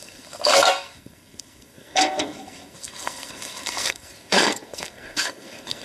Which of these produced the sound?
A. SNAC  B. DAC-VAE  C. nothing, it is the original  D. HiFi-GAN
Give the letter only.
A